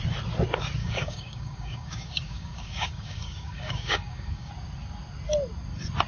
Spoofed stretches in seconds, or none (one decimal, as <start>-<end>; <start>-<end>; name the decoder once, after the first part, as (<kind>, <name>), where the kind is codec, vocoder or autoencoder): 0.8-4.5 (codec, DAC)